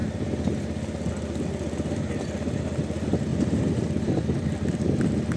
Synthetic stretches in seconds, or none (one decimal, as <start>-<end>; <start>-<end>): none